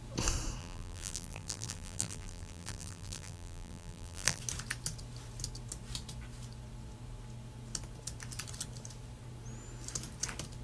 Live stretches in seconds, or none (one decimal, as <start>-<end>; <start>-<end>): 0.0-0.6; 4.4-10.6